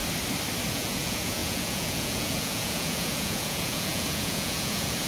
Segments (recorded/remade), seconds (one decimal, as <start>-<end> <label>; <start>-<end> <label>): 0.0-0.7 recorded; 0.7-5.1 remade